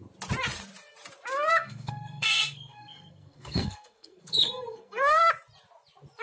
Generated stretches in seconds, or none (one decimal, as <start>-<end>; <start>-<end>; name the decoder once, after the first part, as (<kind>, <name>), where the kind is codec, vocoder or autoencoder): 1.5-5.2 (codec, SNAC)